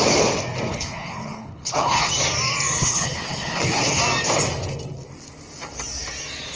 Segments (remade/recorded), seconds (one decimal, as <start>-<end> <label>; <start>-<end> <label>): 0.0-0.7 recorded; 0.7-2.1 remade; 2.1-2.8 recorded; 2.8-4.0 remade; 4.0-6.6 recorded